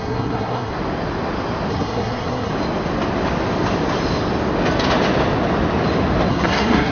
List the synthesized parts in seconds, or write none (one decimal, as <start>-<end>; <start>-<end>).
0.0-0.7; 1.7-2.5; 6.3-6.9